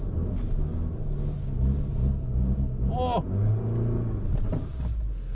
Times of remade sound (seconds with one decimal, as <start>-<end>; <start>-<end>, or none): 1.9-2.9